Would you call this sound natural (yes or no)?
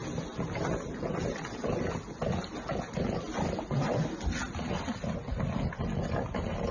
yes